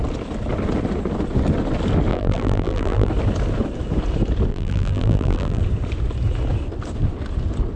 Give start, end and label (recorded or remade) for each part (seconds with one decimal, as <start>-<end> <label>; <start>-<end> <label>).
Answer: 0.0-2.1 recorded; 2.1-3.1 remade; 3.1-4.5 recorded; 4.5-5.6 remade; 5.6-7.8 recorded